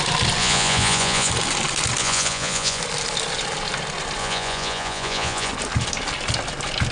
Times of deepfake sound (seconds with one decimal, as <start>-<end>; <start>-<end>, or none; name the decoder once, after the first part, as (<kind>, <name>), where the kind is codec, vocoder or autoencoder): 0.4-1.3 (vocoder, Vocos); 2.0-2.8; 4.2-5.5